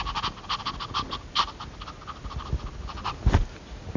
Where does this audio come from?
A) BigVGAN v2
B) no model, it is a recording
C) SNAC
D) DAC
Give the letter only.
B